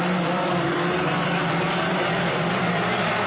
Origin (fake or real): fake